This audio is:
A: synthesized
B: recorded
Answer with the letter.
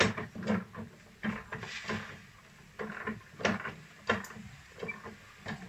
B